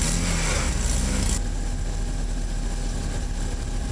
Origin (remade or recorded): recorded